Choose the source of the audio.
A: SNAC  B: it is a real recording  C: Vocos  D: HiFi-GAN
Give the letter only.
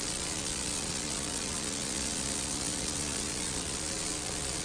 C